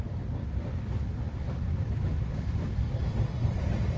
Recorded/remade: remade